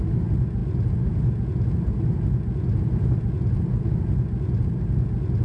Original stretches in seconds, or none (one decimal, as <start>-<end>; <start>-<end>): 0.0-5.4